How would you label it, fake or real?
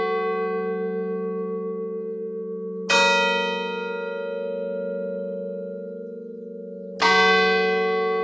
real